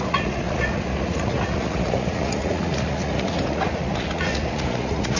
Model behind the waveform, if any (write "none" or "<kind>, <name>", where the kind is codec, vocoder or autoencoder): vocoder, Vocos